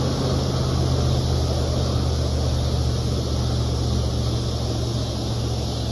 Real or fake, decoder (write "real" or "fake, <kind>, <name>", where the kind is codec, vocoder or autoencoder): real